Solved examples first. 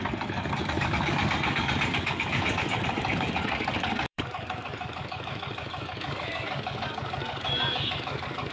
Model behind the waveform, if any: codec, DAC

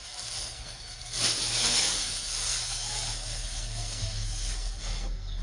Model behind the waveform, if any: codec, SNAC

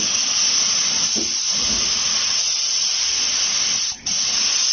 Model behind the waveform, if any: none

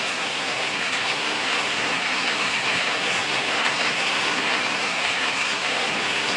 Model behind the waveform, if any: codec, SNAC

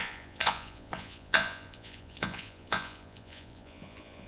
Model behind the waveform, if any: vocoder, Vocos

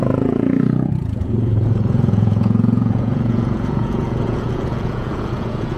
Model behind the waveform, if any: vocoder, Vocos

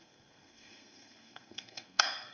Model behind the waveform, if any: codec, SNAC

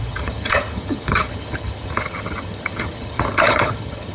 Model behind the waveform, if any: vocoder, HiFi-GAN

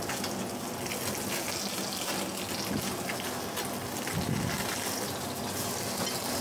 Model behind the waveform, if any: none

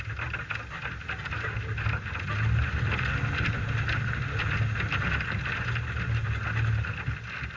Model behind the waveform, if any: none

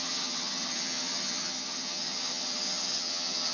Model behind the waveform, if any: vocoder, HiFi-GAN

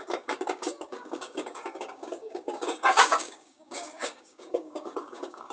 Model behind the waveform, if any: codec, DAC